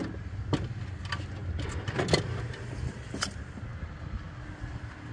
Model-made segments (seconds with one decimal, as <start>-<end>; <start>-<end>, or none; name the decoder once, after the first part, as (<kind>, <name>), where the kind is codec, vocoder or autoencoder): none